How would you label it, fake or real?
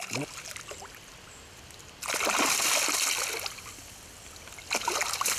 real